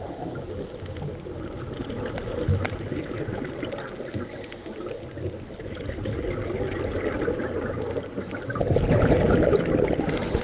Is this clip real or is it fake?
real